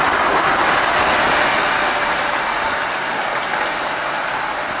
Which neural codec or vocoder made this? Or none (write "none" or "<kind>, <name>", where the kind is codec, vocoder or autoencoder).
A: none